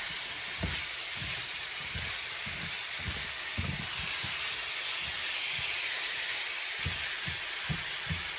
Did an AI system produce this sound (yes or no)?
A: yes